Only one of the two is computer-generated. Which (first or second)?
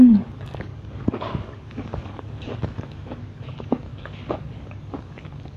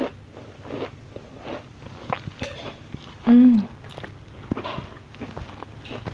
first